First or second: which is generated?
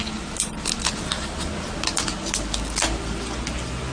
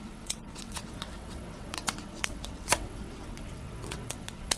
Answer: second